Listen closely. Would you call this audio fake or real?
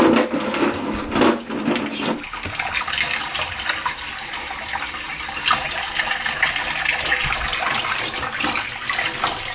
real